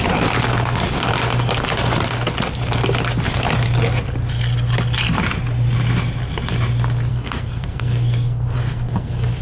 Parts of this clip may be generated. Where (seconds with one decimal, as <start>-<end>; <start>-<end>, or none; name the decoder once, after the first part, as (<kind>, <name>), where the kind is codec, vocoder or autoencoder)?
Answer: 7.1-9.4 (codec, SNAC)